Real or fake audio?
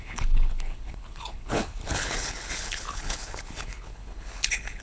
fake